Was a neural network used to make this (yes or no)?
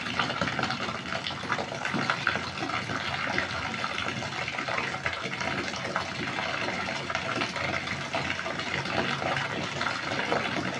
no